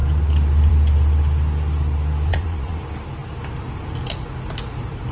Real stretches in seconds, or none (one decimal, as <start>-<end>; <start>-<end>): 0.0-2.3; 2.8-5.1